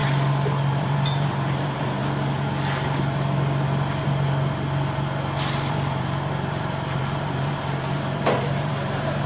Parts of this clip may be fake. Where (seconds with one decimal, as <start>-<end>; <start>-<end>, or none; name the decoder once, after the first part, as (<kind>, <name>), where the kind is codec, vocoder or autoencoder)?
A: 0.6-2.0 (vocoder, BigVGAN v2); 5.7-9.3